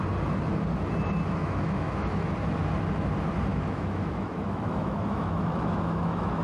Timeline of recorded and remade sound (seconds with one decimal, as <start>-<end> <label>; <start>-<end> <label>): 0.0-1.4 recorded; 1.4-2.3 remade; 2.3-3.5 recorded; 3.5-6.4 remade